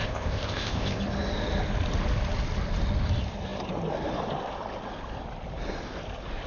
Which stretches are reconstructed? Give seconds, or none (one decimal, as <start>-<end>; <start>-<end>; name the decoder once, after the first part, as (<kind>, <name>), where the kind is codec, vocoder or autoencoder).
0.0-1.0 (codec, ZipCodec)